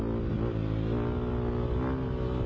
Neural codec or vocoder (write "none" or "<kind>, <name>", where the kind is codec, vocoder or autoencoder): none